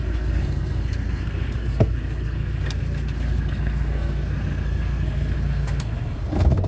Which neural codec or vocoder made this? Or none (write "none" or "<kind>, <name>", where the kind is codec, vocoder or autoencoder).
codec, SNAC